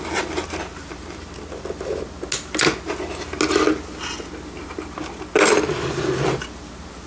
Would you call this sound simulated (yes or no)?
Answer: no